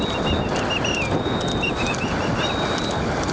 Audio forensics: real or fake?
real